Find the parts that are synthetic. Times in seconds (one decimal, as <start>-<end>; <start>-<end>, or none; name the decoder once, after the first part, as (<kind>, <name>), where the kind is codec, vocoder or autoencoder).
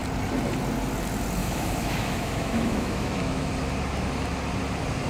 1.4-3.5 (autoencoder, DAC-VAE)